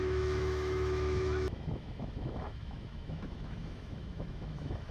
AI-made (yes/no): yes